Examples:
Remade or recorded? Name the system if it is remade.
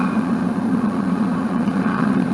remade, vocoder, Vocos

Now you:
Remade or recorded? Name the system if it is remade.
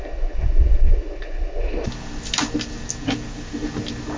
recorded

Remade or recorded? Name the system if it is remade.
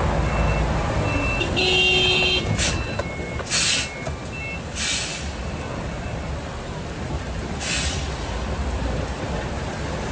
recorded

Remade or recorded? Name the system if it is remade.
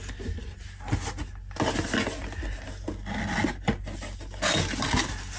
recorded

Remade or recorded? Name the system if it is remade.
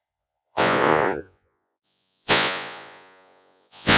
remade, vocoder, Vocos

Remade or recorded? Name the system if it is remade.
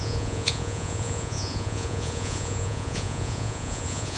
remade, vocoder, Vocos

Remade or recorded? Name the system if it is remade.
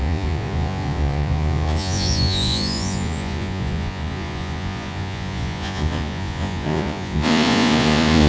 remade, vocoder, Vocos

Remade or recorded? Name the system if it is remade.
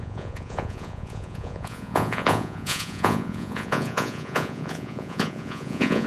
remade, vocoder, Vocos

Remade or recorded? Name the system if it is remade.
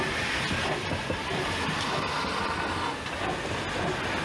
recorded